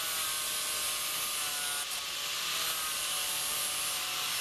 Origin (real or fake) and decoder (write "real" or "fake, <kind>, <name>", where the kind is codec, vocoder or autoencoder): real